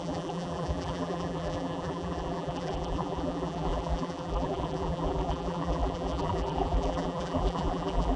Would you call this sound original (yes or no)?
no